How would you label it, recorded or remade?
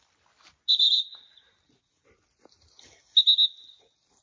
recorded